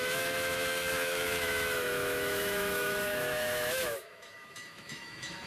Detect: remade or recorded remade